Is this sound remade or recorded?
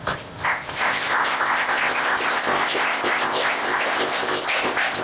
remade